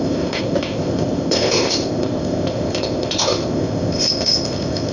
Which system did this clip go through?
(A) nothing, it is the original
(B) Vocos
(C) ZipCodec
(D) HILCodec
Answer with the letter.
C